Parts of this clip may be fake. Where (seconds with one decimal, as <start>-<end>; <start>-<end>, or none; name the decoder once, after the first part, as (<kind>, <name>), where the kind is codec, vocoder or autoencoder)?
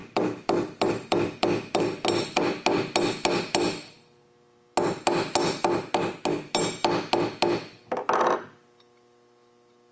0.0-1.8 (vocoder, BigVGAN v2)